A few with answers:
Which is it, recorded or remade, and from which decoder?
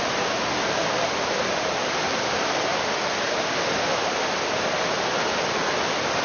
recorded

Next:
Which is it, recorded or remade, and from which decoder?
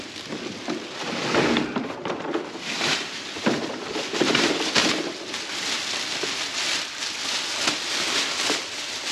remade, vocoder, BigVGAN v2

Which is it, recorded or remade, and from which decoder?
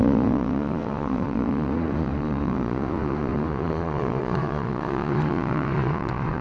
remade, vocoder, Vocos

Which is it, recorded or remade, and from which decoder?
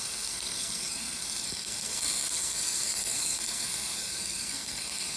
remade, codec, SNAC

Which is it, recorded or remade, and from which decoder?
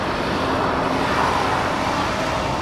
recorded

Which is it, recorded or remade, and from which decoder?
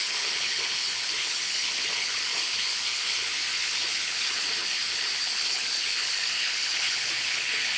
remade, codec, HILCodec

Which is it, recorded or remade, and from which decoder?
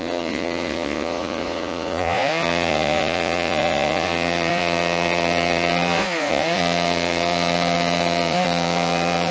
remade, vocoder, Vocos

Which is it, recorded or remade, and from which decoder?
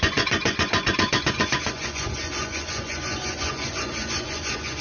remade, vocoder, Vocos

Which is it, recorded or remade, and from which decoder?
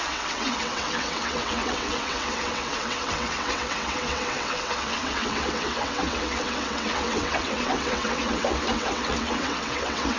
remade, vocoder, WaveNeXt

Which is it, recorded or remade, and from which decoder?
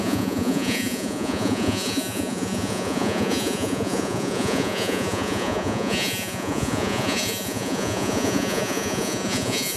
remade, vocoder, Vocos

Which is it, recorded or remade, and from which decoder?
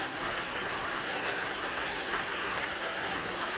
remade, codec, SNAC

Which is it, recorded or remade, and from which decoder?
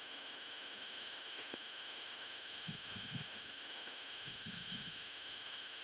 remade, autoencoder, DAC-VAE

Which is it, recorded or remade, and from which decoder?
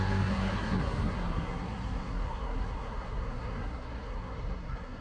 remade, codec, SNAC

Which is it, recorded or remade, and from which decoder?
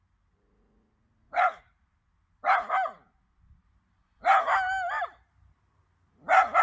recorded